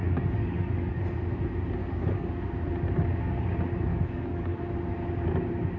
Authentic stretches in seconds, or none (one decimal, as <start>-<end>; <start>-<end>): 1.0-1.8; 2.3-3.9; 4.6-5.8